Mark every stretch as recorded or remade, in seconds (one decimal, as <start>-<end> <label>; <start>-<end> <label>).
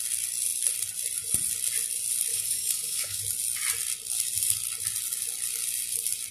0.0-2.3 recorded; 2.3-3.2 remade; 3.2-6.3 recorded